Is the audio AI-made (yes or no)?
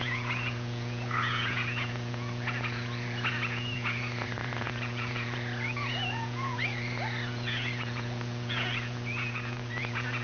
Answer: yes